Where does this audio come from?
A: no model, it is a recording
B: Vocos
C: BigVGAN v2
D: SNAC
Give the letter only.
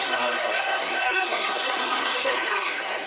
D